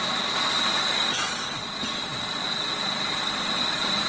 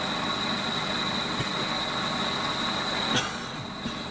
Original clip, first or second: second